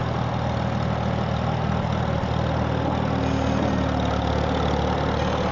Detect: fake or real real